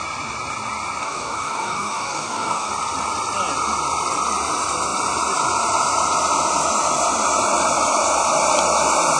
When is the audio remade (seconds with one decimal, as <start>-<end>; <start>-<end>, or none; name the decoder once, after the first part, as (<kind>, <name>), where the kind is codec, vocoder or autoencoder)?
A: 1.0-2.7 (codec, DAC)